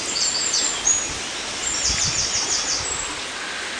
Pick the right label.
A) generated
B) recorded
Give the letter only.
B